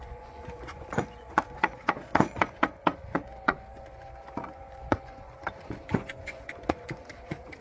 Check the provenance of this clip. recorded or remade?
remade